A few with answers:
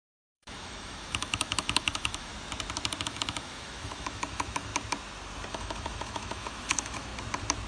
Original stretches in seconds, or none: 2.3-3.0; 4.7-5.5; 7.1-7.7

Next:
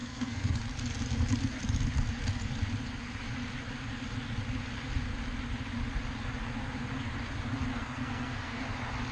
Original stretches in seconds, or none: 0.6-7.7; 8.6-9.1

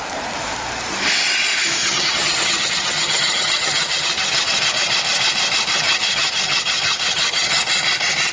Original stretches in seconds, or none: 0.0-1.8; 4.7-5.8; 7.6-8.3

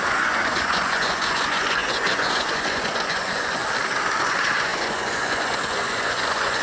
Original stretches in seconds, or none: 3.6-4.2